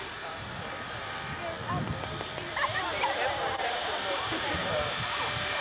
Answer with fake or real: real